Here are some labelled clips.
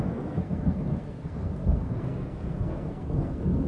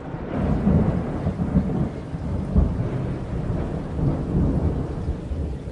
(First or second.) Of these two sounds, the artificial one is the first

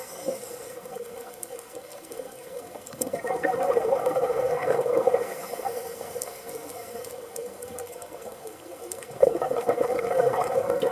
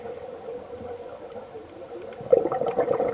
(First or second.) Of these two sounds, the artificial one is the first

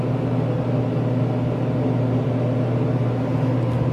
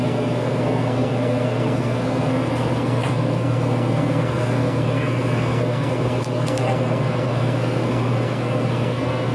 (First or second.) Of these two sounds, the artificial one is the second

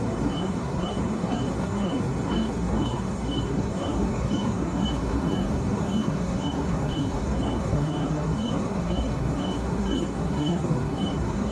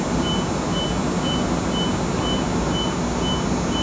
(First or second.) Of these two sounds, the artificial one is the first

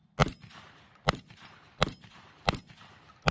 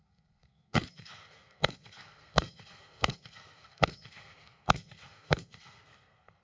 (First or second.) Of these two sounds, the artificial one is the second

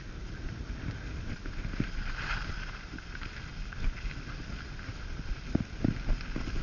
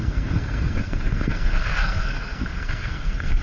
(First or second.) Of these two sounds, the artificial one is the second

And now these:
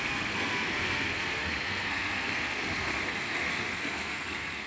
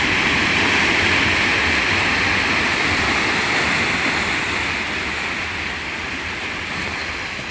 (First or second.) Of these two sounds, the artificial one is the first